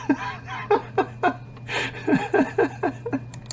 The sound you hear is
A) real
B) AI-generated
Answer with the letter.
A